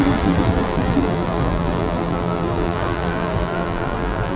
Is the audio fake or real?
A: fake